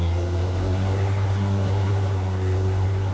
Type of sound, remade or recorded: remade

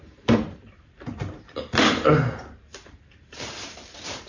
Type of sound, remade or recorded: remade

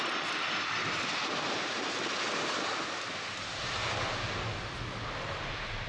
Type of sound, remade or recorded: recorded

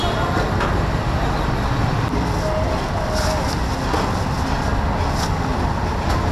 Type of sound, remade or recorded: recorded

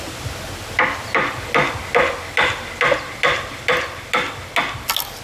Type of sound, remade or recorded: recorded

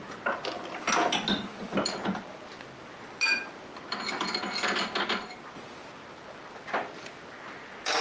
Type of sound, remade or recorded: recorded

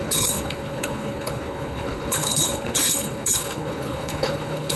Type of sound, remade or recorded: remade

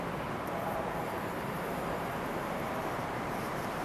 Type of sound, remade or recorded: remade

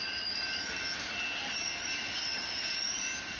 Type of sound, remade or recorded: recorded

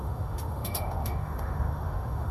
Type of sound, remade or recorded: remade